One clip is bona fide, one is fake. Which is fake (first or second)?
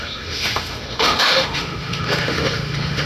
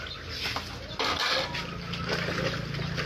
first